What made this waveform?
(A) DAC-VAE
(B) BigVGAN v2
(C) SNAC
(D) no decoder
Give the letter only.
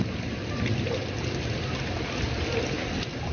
D